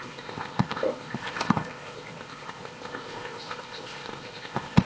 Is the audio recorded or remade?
remade